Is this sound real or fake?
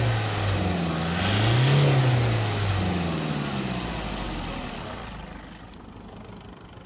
real